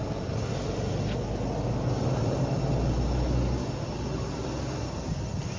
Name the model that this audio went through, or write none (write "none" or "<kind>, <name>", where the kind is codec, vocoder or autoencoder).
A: none